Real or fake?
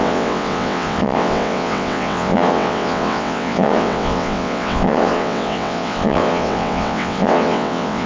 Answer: fake